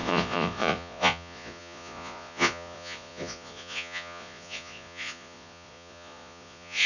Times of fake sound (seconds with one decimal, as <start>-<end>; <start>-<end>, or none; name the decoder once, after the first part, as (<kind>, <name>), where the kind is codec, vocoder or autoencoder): 0.0-6.9 (vocoder, Vocos)